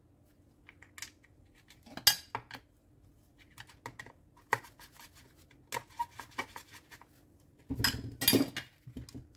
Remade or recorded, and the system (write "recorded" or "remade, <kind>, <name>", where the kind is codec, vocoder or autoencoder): recorded